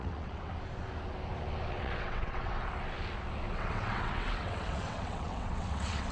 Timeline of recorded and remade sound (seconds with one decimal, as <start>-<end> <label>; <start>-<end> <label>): 0.0-0.5 remade; 0.5-1.7 recorded; 1.7-2.6 remade; 2.6-3.5 recorded; 3.5-6.1 remade